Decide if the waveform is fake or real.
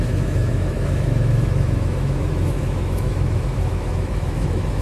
fake